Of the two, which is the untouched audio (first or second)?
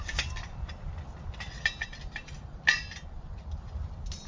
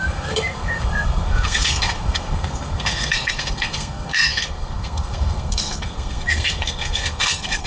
first